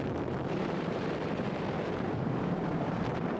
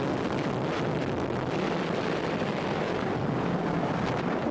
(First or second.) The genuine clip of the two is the second